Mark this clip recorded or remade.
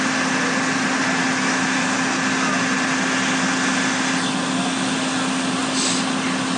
recorded